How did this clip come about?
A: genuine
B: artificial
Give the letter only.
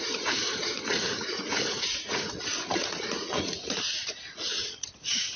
B